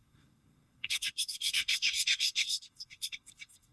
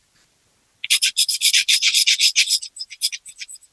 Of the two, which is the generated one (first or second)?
first